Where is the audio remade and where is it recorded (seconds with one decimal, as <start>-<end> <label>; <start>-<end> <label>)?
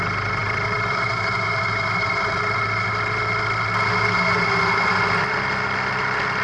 0.0-0.4 recorded; 0.4-1.2 remade; 1.2-6.4 recorded